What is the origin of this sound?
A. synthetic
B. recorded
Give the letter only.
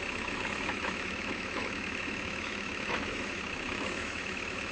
A